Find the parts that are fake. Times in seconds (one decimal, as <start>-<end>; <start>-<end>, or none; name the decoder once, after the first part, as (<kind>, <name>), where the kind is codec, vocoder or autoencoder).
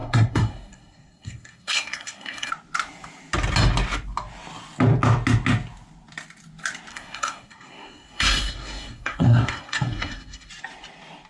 0.0-2.5 (codec, SNAC); 6.9-10.5